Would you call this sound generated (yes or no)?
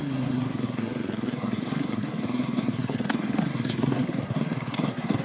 yes